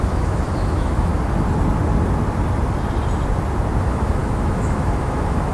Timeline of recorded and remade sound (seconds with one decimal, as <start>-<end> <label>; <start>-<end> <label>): 0.0-1.1 remade; 1.1-3.8 recorded; 3.8-5.5 remade

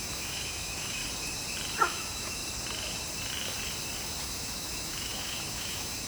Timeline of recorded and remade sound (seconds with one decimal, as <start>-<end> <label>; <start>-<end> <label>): 0.0-1.0 remade; 1.0-1.8 recorded; 1.8-2.4 remade; 2.4-4.2 recorded; 4.2-6.1 remade